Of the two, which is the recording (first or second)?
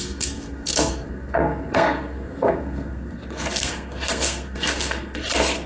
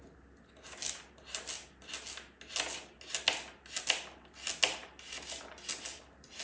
second